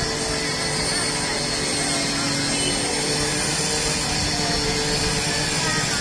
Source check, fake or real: real